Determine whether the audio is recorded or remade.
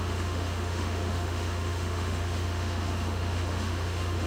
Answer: remade